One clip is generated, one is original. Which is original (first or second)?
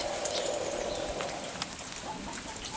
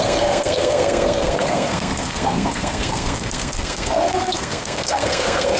first